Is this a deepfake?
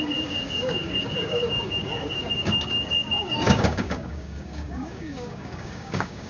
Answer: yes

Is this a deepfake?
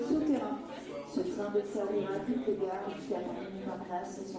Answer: no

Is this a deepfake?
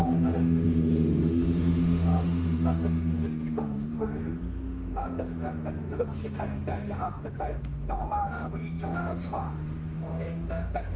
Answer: yes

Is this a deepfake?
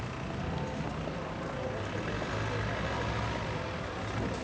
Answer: no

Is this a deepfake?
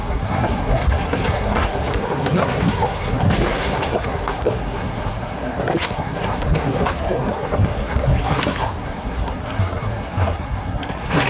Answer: yes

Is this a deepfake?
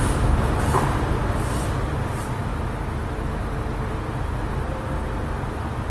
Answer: no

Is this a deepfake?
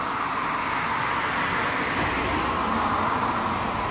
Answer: no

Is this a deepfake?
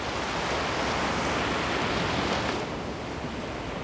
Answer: no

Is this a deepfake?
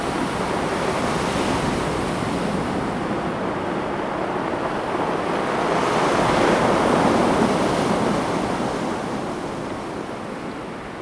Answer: no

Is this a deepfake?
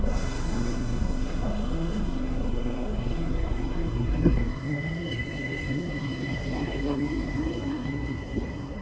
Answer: yes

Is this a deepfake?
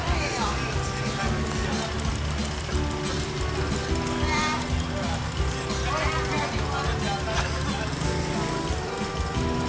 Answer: no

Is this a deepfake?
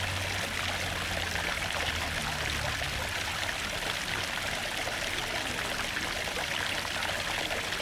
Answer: no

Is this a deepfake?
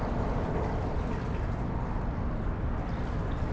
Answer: no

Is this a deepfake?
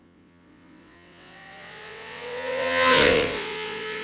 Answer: yes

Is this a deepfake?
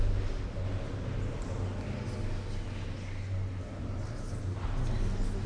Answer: no